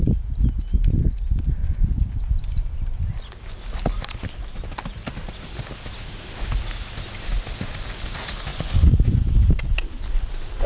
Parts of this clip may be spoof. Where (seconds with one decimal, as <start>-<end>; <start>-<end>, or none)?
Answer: 1.6-2.1; 8.5-9.2